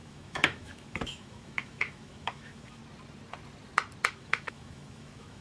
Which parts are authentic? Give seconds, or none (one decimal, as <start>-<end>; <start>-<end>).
2.8-4.1